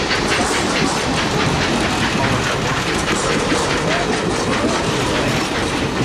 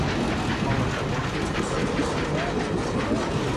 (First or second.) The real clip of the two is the second